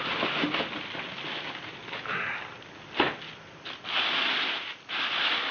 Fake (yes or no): no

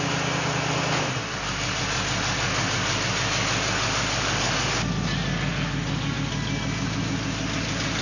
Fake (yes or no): no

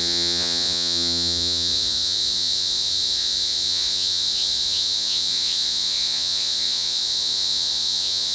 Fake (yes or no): yes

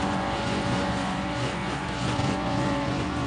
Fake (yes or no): yes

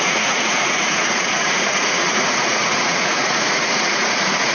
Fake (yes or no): yes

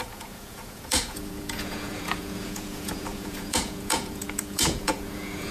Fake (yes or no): yes